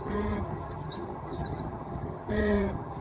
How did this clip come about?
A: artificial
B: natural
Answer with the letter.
A